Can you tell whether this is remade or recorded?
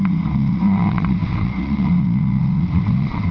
remade